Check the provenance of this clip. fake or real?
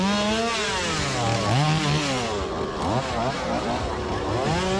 real